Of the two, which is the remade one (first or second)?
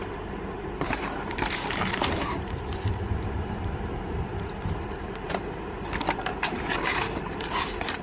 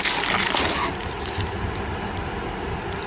first